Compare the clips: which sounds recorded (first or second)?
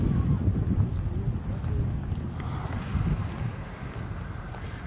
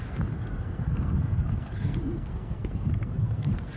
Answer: first